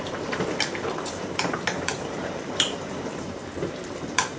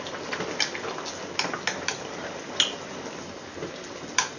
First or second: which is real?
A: second